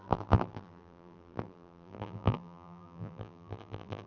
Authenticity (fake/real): fake